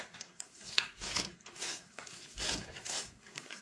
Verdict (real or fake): fake